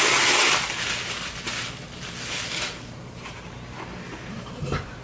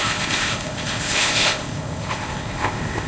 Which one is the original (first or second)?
first